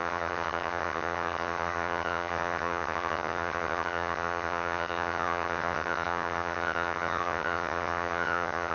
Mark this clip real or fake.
fake